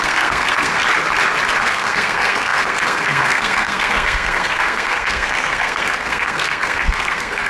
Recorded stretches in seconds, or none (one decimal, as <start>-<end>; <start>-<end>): 0.8-1.6